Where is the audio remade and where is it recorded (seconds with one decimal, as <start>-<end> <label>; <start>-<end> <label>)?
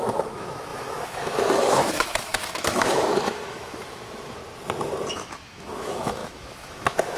0.0-4.4 remade; 4.4-5.1 recorded; 5.1-7.2 remade